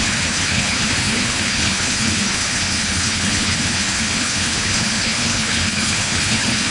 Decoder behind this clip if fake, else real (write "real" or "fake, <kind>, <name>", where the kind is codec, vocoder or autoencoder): fake, codec, HILCodec